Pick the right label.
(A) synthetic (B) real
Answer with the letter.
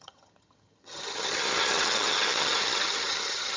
A